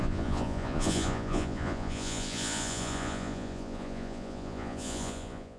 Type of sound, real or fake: fake